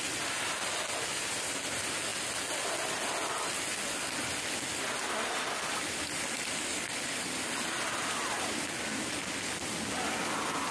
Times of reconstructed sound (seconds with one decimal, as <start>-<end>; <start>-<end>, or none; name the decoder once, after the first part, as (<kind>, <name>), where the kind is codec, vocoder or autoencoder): none